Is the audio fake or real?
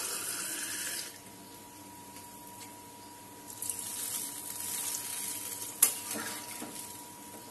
real